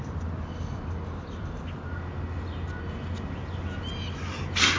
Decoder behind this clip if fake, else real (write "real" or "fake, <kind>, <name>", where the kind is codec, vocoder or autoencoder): real